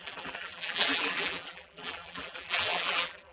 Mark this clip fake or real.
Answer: fake